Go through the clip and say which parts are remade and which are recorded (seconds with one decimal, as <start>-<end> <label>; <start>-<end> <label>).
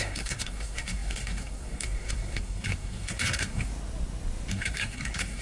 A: 0.0-3.7 remade; 3.7-4.5 recorded; 4.5-5.4 remade